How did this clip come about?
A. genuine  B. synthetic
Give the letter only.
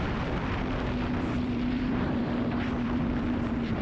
B